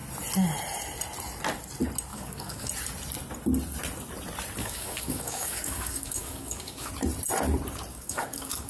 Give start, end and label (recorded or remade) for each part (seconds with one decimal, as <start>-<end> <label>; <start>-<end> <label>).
0.0-2.1 recorded; 2.1-2.7 remade; 2.7-4.6 recorded; 4.6-6.9 remade; 6.9-7.9 recorded; 7.9-8.7 remade